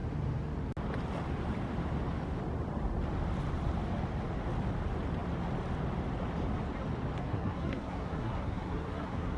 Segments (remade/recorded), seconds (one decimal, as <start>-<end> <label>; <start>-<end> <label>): 0.0-7.2 recorded; 7.2-9.4 remade